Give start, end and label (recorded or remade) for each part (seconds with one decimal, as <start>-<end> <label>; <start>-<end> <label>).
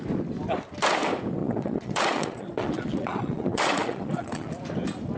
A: 0.0-1.4 recorded; 1.4-4.5 remade; 4.5-5.2 recorded